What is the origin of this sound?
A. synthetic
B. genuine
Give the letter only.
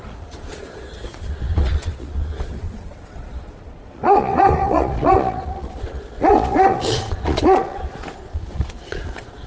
A